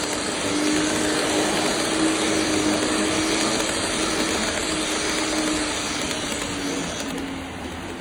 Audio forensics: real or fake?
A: real